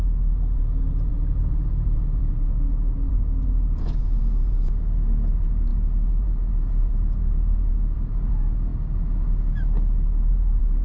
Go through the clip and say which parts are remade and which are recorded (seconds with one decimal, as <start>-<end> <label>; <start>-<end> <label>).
0.0-8.7 remade; 8.7-10.3 recorded; 10.3-10.8 remade